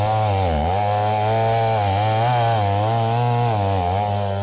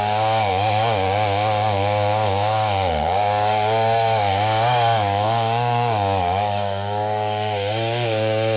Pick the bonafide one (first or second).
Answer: first